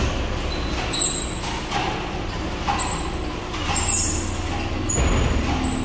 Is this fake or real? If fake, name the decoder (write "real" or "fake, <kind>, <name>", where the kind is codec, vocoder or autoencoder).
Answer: real